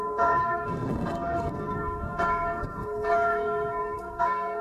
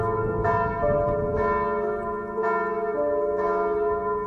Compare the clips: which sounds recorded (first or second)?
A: second